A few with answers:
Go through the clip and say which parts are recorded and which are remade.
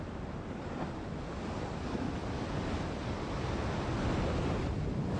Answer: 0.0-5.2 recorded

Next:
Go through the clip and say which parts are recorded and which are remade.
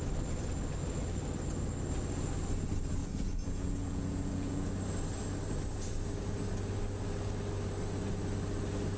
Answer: 0.0-3.0 recorded; 3.0-4.7 remade; 4.7-9.0 recorded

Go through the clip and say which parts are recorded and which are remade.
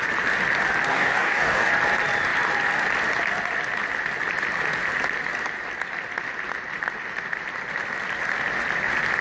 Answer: 0.0-0.9 recorded; 0.9-1.7 remade; 1.7-9.2 recorded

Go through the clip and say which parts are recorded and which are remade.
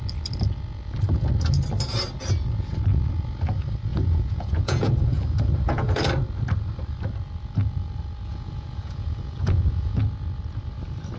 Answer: 0.0-3.9 recorded; 3.9-5.9 remade; 5.9-8.3 recorded; 8.3-10.0 remade; 10.0-11.2 recorded